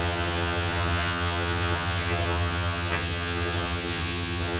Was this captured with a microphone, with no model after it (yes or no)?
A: no